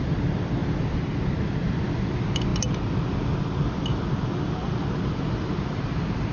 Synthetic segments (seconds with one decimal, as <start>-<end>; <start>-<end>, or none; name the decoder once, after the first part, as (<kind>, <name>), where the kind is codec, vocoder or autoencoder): none